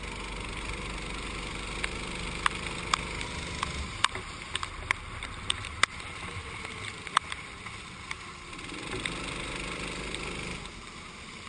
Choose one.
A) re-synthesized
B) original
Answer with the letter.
B